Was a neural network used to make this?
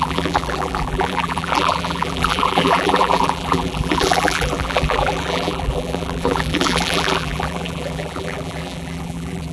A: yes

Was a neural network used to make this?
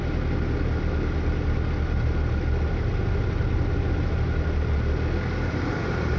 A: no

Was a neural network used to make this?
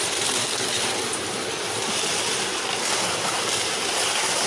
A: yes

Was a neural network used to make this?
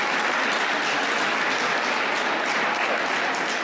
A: no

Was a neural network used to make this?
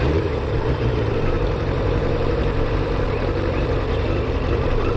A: yes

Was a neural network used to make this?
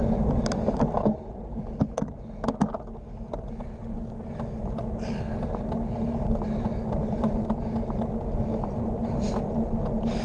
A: no